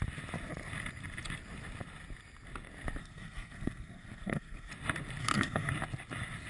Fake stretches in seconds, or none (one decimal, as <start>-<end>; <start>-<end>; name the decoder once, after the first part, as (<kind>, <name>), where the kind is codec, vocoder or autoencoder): 3.0-4.7 (codec, SNAC); 5.2-5.7

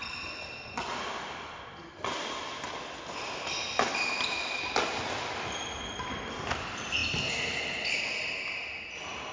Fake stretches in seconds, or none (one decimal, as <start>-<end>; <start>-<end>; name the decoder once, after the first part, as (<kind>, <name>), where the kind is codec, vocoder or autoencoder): none

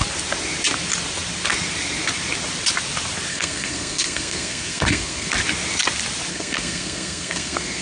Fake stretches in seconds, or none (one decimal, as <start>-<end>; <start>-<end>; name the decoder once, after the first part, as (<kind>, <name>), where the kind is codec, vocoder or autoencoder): 3.3-5.3 (codec, SNAC); 6.3-7.8

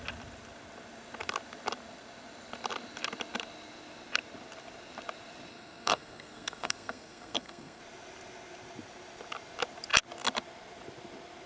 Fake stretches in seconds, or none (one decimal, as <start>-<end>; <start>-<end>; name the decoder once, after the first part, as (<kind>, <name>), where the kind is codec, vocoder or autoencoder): 5.5-7.8 (codec, SNAC)

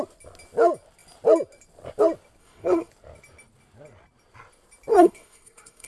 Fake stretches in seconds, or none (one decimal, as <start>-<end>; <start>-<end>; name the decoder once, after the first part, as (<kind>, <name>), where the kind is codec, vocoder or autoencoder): 2.4-2.9 (codec, SNAC); 4.9-5.9

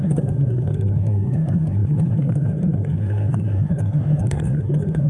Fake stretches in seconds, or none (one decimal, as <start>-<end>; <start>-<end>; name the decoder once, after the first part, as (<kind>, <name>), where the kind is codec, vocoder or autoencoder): 0.0-5.1 (codec, SNAC)

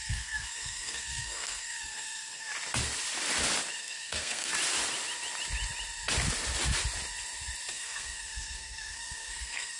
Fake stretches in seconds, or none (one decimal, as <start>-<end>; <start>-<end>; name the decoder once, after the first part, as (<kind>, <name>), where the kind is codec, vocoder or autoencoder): 0.0-2.5 (codec, SNAC); 3.8-4.5; 7.7-9.8

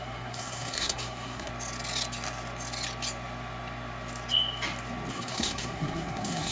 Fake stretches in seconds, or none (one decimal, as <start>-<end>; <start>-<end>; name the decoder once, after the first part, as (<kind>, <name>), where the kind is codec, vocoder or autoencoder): 0.0-1.5 (codec, SNAC); 5.1-6.5